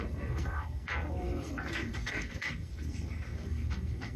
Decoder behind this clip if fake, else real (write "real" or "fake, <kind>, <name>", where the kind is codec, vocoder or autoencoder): fake, codec, SNAC